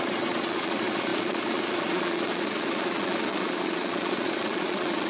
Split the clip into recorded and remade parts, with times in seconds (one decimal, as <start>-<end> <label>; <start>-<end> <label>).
0.0-5.1 remade

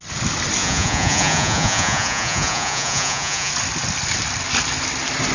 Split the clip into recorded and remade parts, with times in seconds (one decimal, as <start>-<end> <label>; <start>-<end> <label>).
0.0-0.6 recorded; 0.6-3.5 remade; 3.5-5.3 recorded

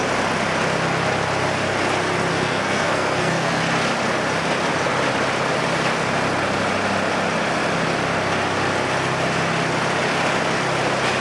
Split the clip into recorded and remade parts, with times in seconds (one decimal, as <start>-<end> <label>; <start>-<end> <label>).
0.0-2.3 recorded; 2.3-3.6 remade; 3.6-11.2 recorded

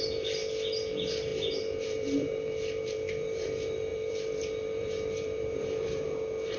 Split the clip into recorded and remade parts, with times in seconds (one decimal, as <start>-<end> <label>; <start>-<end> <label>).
0.0-0.4 remade; 0.4-0.9 recorded; 0.9-6.6 remade

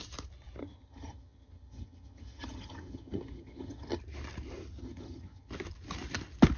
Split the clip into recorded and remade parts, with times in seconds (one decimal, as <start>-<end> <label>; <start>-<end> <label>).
0.0-0.6 recorded; 0.6-4.0 remade; 4.0-4.8 recorded; 4.8-5.5 remade; 5.5-6.6 recorded